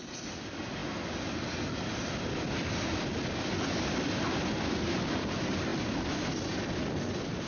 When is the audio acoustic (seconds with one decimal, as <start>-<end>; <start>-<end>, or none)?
0.0-7.5

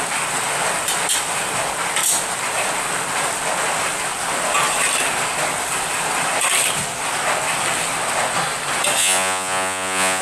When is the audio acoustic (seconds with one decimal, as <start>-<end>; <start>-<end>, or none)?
0.0-9.0